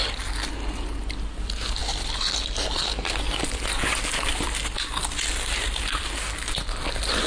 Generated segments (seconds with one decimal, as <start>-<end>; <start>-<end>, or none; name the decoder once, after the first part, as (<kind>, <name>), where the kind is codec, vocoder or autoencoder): none